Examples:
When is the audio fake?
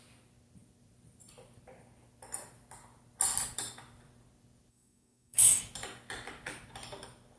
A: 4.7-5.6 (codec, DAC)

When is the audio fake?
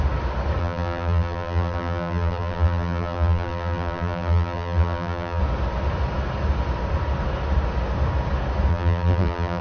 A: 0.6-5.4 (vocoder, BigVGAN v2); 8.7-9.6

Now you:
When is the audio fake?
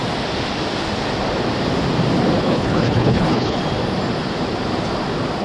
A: 2.4-3.6 (codec, HILCodec)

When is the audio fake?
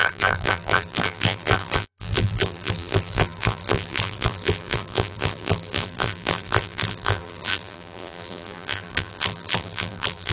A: 0.0-10.3 (vocoder, BigVGAN v2)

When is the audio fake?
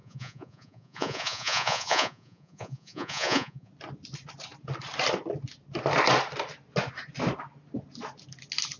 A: 0.0-3.7 (vocoder, Vocos)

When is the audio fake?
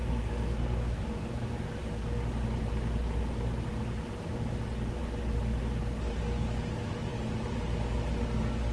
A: 0.0-1.0 (codec, SNAC)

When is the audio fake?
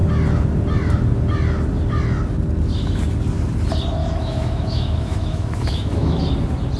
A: 4.0-6.2 (autoencoder, DAC-VAE)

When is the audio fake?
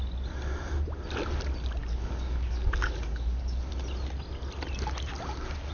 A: 1.8-3.7 (codec, DAC)